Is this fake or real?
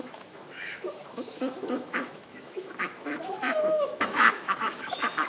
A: fake